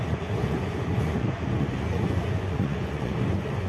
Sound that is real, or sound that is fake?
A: fake